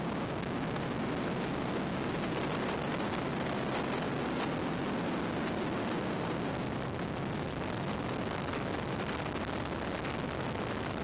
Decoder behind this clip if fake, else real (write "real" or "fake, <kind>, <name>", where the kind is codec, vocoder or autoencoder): real